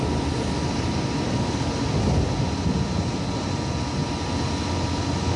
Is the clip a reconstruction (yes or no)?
no